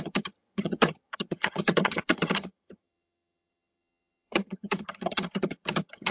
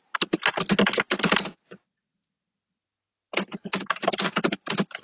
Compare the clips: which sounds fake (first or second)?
first